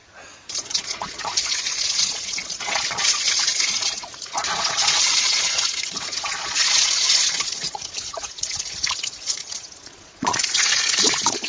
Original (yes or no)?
no